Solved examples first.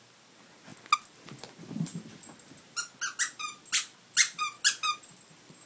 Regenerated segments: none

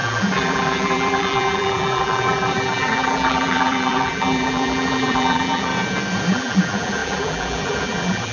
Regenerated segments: 0.0-5.7 (vocoder, BigVGAN v2); 6.3-8.3

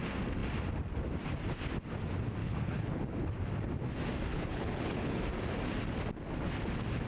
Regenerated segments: 2.4-3.0 (codec, HILCodec); 4.3-5.2

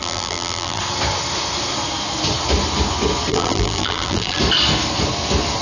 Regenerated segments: 0.0-0.8 (vocoder, BigVGAN v2); 3.3-4.4

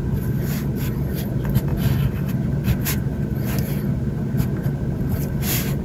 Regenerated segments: none

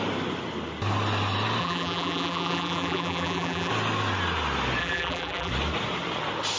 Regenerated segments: 1.6-3.7 (vocoder, BigVGAN v2); 4.8-5.5

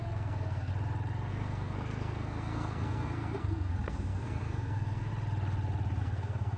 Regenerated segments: 0.0-0.7 (codec, SNAC); 1.3-5.1; 6.0-6.6